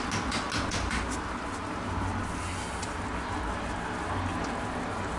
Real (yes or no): yes